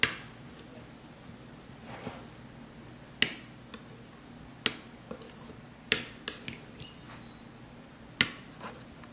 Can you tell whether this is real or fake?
real